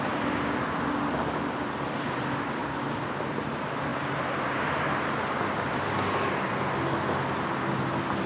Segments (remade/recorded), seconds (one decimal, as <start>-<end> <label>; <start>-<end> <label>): 0.0-8.3 recorded